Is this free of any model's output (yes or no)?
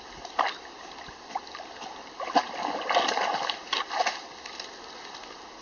yes